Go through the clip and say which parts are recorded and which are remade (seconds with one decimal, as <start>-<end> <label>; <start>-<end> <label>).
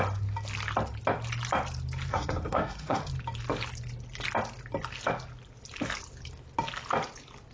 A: 0.0-2.1 recorded; 2.1-3.0 remade; 3.0-7.5 recorded